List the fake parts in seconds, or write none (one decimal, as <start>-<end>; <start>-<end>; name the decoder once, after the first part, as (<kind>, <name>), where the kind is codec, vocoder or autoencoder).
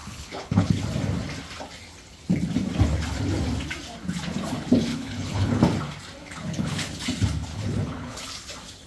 0.0-0.8 (codec, HILCodec); 4.9-5.6; 6.2-6.9; 7.5-8.2